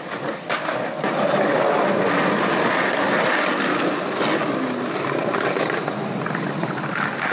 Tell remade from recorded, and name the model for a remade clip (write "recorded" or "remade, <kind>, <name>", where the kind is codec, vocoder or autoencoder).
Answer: recorded